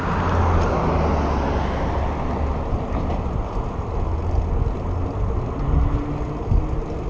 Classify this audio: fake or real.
real